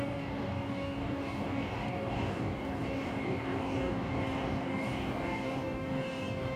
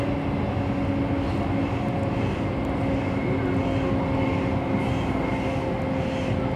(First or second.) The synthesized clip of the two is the first